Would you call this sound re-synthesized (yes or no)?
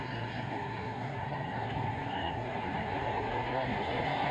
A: yes